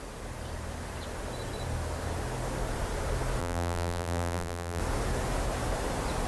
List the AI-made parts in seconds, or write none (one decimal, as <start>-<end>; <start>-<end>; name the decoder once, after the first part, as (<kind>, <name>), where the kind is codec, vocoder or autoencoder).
3.4-4.8 (vocoder, BigVGAN v2)